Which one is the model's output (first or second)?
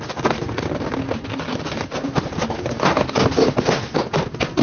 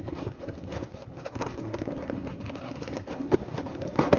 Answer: second